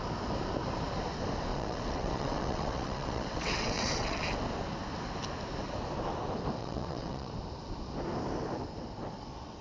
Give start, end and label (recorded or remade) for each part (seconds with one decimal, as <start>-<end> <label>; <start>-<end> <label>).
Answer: 0.0-1.5 recorded; 1.5-4.2 remade; 4.2-6.6 recorded; 6.6-7.3 remade; 7.3-9.6 recorded